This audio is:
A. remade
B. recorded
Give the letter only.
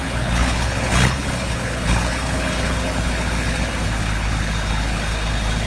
A